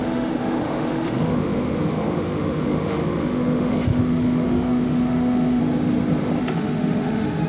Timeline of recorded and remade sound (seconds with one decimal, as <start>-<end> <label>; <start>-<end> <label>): 0.0-5.6 remade; 5.6-6.4 recorded; 6.4-7.5 remade